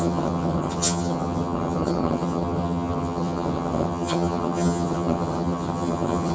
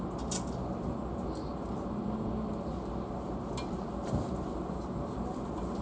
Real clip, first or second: second